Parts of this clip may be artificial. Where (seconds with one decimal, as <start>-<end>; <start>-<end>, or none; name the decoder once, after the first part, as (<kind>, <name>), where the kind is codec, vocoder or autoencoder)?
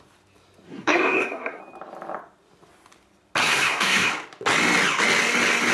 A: 0.7-1.6 (codec, SNAC); 3.4-4.1